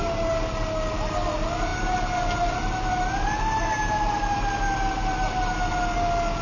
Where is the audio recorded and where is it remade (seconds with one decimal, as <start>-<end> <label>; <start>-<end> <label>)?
0.0-6.4 recorded